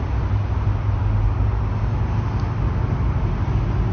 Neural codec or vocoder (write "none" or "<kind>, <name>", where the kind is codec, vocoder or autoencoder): none